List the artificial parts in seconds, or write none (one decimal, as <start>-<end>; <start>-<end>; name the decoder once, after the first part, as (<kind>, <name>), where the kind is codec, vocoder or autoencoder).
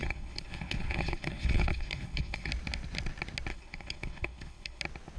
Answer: 0.0-2.5 (codec, HILCodec); 3.5-4.8